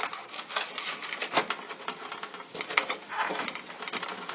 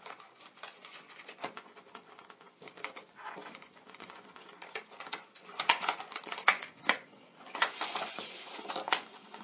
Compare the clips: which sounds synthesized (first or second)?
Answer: second